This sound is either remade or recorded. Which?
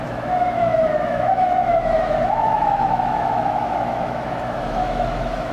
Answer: remade